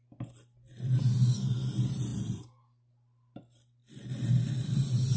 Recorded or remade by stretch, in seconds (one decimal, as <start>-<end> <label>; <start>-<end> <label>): 0.0-5.2 recorded